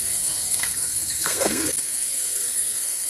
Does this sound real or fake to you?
fake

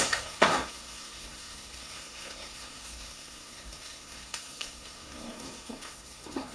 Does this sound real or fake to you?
fake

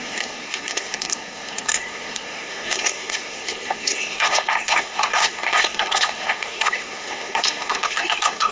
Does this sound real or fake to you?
fake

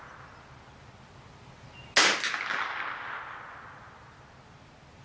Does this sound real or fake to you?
real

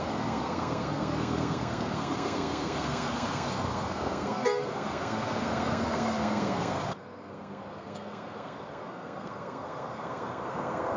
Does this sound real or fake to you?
fake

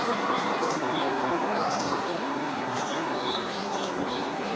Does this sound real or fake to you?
fake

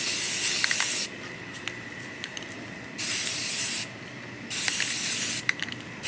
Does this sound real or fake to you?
real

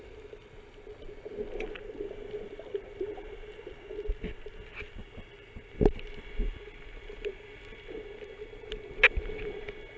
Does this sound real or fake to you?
real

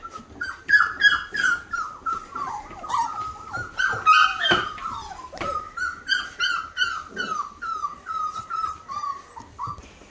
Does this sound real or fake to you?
real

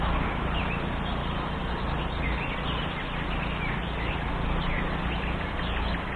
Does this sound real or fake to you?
real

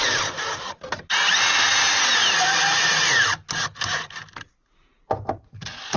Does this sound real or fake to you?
real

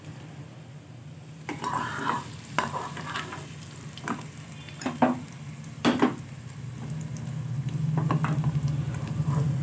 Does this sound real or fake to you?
real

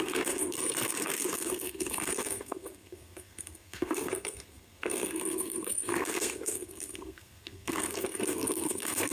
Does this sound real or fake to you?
fake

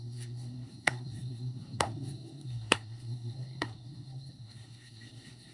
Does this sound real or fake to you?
fake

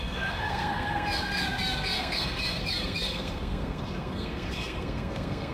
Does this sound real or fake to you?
fake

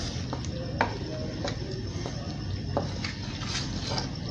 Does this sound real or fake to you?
real